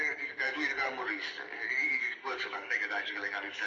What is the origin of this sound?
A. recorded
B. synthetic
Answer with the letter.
B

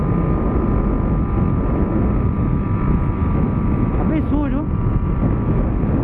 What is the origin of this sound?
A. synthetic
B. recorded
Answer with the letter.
B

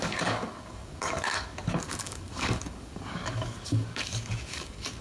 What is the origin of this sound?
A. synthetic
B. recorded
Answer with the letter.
A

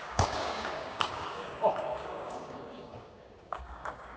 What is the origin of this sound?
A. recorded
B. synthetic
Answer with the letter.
B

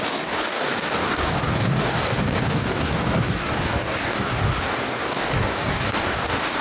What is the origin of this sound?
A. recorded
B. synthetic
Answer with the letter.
B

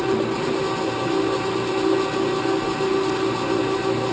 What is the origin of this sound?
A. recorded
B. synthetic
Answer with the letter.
A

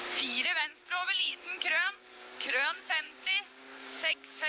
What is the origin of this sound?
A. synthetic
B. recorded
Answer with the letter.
A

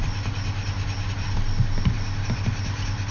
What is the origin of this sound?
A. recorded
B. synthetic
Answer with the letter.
A